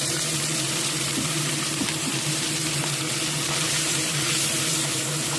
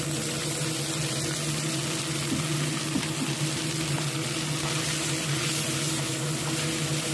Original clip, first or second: second